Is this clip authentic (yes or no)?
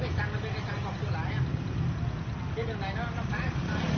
yes